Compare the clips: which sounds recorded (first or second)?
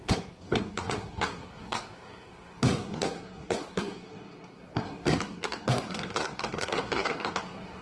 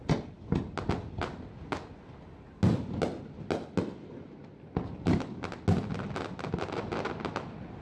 second